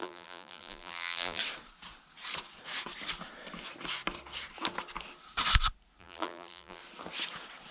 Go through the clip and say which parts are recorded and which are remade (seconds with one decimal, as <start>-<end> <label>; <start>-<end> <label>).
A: 0.0-1.4 remade; 1.4-6.0 recorded; 6.0-6.8 remade; 6.8-7.7 recorded